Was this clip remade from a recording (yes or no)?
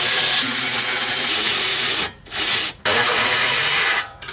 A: yes